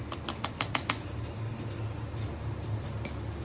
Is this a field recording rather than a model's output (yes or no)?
yes